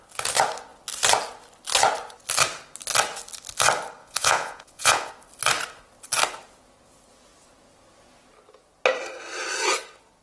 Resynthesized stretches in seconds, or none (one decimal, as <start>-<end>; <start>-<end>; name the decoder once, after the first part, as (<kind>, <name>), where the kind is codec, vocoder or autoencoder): 4.0-5.1 (vocoder, Vocos)